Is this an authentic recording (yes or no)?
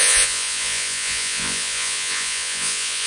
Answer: no